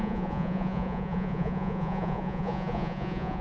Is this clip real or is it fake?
fake